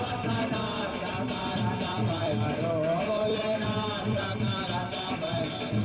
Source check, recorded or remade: remade